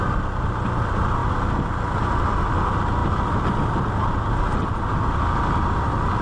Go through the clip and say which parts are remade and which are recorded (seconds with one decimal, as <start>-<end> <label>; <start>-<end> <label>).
0.0-6.2 recorded